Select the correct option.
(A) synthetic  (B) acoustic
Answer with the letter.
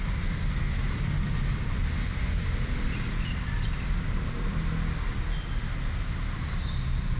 B